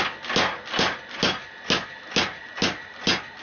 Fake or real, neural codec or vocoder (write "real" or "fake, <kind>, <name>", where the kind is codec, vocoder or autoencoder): real